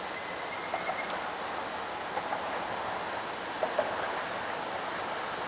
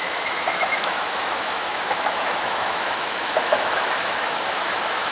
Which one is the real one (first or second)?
first